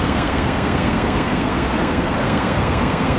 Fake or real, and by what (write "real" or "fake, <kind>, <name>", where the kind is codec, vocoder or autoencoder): fake, codec, SNAC